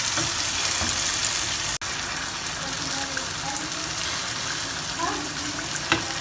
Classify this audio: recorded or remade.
recorded